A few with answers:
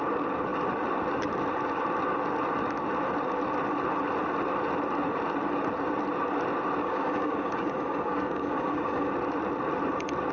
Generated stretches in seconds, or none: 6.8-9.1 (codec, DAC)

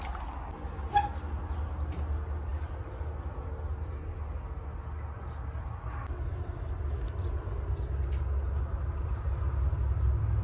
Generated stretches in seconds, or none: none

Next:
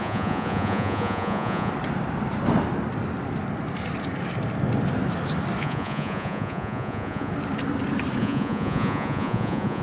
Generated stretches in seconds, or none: 0.0-1.7 (vocoder, Vocos); 5.6-7.3; 8.2-9.8